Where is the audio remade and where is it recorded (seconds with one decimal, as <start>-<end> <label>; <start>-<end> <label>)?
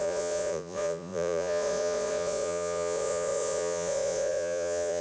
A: 0.0-5.0 remade